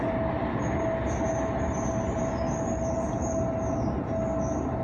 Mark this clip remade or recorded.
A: recorded